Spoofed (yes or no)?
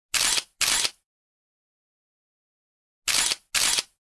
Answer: no